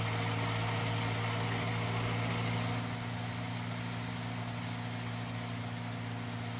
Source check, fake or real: real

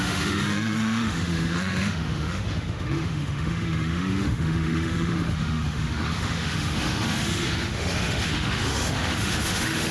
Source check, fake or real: fake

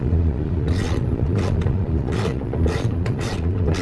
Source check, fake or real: fake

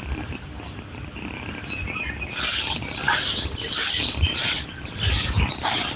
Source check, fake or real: real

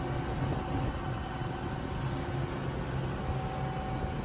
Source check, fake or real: real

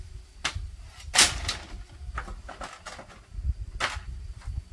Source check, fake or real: real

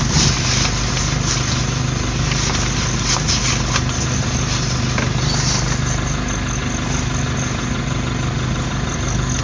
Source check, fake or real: real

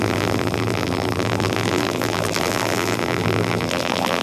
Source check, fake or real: fake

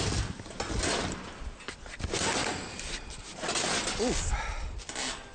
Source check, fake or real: real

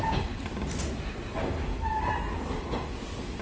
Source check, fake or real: real